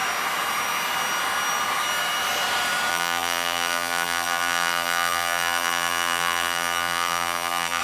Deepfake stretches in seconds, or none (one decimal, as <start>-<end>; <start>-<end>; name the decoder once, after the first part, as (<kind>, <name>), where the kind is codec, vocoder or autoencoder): 2.9-7.8 (vocoder, BigVGAN v2)